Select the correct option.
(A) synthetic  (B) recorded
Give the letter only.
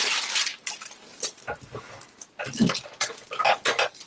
B